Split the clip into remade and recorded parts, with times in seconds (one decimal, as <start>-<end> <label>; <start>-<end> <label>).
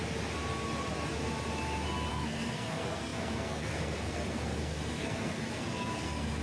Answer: 0.0-2.1 recorded; 2.1-6.4 remade